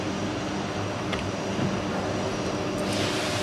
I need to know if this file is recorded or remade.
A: recorded